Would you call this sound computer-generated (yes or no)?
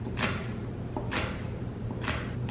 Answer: no